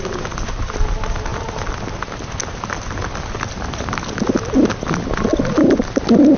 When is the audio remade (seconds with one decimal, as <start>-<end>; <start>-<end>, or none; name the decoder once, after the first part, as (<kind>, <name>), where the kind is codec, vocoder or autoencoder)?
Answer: none